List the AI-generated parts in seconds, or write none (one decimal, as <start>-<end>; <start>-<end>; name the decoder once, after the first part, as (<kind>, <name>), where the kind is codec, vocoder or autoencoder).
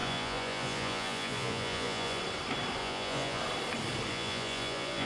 0.0-2.2 (vocoder, Vocos); 2.8-3.4; 4.1-5.1